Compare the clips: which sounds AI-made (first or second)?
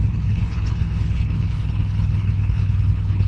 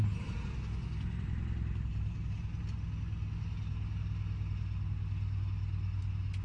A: first